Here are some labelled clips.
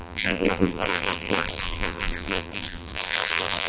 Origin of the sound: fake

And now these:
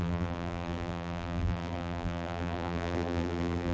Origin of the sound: fake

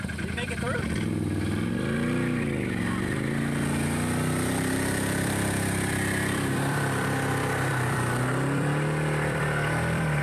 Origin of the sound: fake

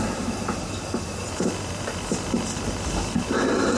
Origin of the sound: real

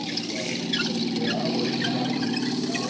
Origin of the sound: fake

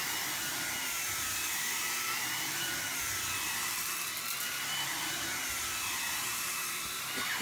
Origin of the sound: fake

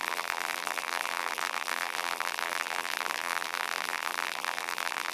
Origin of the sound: fake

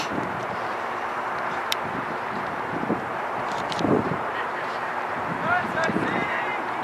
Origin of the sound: fake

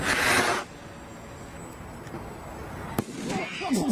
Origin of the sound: real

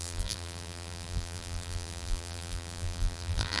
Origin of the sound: fake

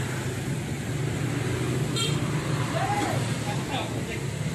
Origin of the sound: real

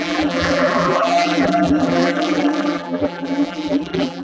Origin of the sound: fake